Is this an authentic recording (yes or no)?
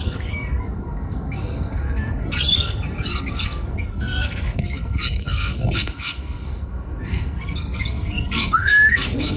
no